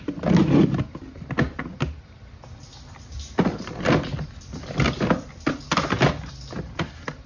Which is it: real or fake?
real